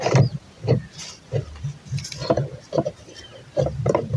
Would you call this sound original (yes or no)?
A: yes